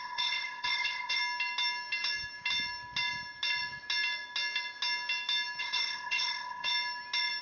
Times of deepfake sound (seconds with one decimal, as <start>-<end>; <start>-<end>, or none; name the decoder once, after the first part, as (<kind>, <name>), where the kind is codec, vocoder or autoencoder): 0.0-1.2 (codec, ZipCodec); 5.6-6.7